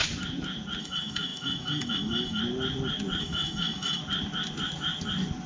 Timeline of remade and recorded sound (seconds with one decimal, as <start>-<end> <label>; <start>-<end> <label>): 0.0-0.8 recorded; 0.8-2.4 remade; 2.4-3.2 recorded; 3.2-4.0 remade; 4.0-5.5 recorded